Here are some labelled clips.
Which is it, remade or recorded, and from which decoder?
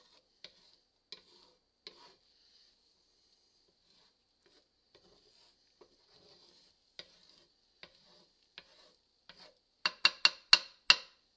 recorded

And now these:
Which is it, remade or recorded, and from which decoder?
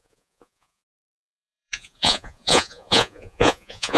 remade, vocoder, Vocos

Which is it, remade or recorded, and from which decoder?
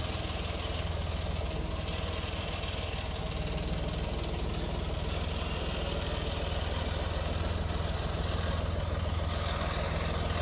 recorded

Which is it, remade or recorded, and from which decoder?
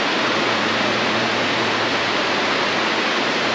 remade, vocoder, Vocos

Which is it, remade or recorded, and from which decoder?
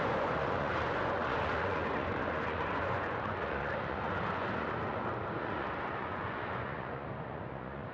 remade, vocoder, Vocos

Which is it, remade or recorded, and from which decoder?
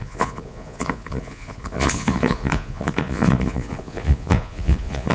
remade, vocoder, Vocos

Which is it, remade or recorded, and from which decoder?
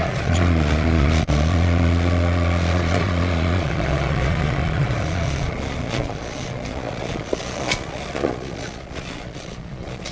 remade, vocoder, Vocos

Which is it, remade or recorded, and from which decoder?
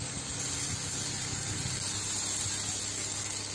recorded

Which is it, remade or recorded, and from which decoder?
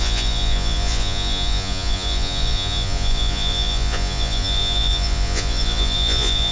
remade, vocoder, Vocos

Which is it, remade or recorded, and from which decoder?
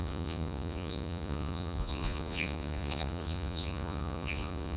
remade, vocoder, Vocos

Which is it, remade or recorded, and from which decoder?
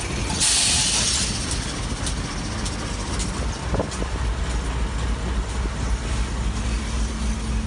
recorded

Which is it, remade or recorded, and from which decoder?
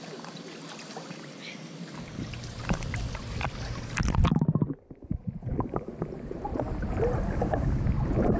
recorded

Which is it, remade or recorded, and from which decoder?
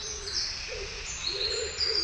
remade, vocoder, Vocos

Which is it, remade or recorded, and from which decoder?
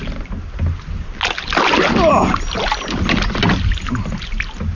recorded